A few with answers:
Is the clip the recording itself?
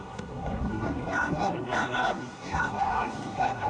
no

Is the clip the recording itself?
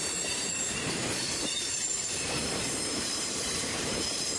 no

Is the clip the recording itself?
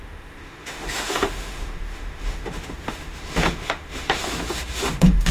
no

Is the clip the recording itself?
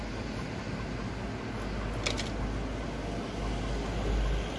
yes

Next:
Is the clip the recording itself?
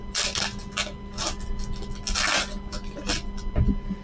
yes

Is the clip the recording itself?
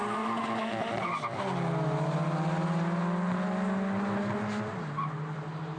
yes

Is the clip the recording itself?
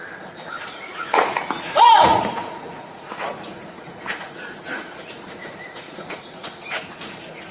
no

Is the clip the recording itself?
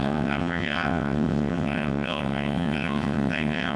no